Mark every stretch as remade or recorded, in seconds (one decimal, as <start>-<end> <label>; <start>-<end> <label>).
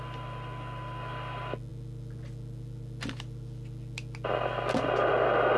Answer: 0.0-5.6 recorded